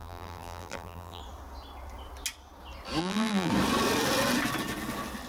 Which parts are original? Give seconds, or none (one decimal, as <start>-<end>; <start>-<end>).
1.2-3.0; 3.5-5.3